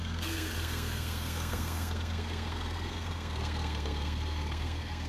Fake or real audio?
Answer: fake